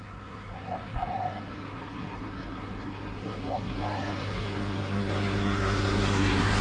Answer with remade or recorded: remade